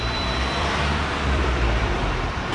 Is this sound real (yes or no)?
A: no